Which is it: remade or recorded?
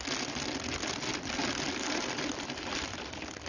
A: recorded